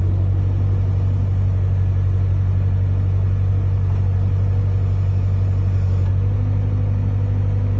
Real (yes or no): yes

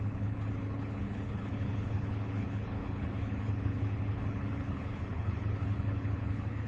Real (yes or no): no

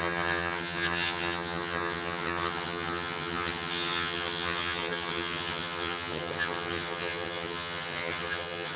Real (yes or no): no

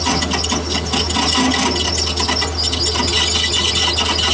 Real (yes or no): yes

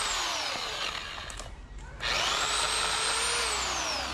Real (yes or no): yes